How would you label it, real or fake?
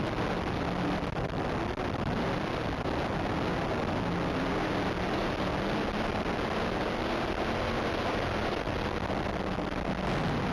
real